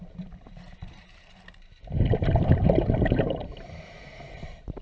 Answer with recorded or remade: remade